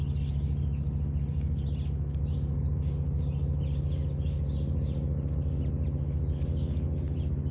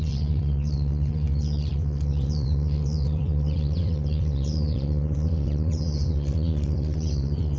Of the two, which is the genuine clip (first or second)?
first